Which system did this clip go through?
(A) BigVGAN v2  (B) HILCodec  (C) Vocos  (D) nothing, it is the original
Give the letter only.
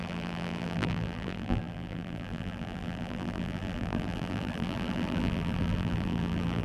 A